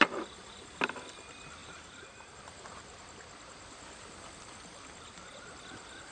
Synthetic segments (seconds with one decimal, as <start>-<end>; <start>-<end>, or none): 1.6-2.3